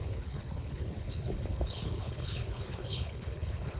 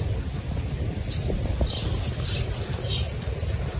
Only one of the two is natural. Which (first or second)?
second